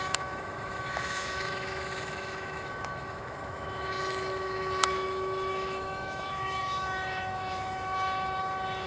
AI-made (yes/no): yes